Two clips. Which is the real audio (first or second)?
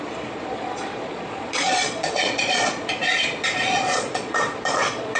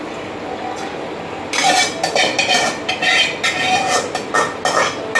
second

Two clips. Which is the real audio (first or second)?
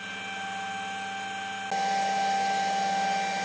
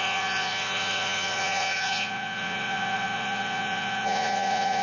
first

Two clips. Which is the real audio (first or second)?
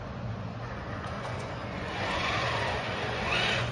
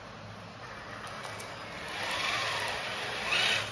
second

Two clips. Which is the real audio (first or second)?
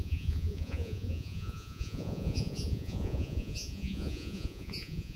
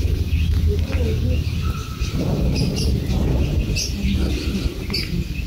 second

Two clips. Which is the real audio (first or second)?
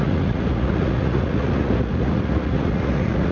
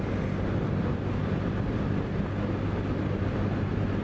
second